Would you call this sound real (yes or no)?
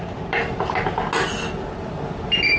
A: yes